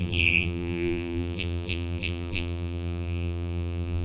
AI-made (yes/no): yes